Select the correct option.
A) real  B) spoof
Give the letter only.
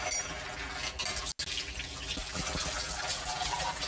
A